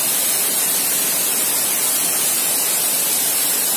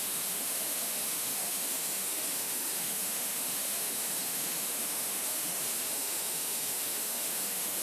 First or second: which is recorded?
first